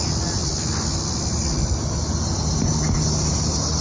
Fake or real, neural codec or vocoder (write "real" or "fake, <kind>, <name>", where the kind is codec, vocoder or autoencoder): real